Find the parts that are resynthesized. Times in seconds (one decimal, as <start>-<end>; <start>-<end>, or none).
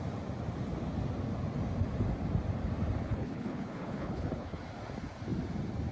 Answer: 3.0-4.6